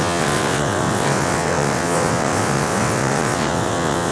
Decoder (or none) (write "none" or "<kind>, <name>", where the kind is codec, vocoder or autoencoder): vocoder, WaveNeXt